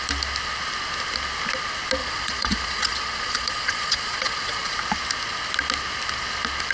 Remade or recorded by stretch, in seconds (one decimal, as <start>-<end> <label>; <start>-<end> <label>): 0.0-2.0 recorded; 2.0-4.8 remade; 4.8-6.7 recorded